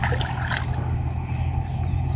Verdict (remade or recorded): recorded